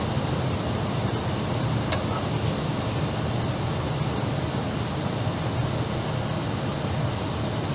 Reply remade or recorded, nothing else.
recorded